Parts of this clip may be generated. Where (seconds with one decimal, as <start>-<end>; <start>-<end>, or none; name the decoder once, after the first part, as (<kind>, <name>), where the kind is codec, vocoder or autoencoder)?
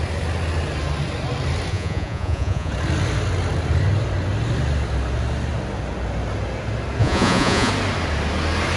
1.7-2.7 (vocoder, Vocos); 7.0-7.7